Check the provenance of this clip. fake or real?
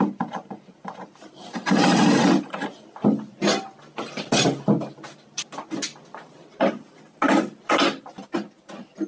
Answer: real